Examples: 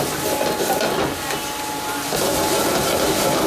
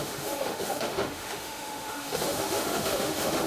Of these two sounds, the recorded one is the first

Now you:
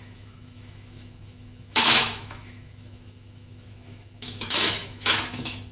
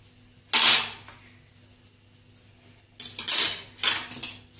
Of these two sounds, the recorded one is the second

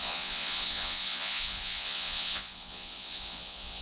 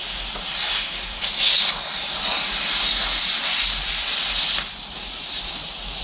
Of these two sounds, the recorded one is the second